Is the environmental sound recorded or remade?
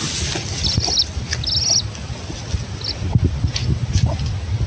recorded